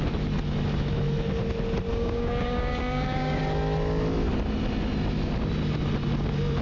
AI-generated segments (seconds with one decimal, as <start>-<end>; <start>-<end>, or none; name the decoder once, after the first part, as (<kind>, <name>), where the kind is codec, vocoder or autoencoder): 1.9-3.4 (codec, DAC)